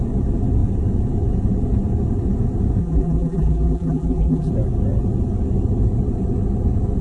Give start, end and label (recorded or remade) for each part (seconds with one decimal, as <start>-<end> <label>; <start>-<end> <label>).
0.0-2.8 recorded; 2.8-4.5 remade; 4.5-7.0 recorded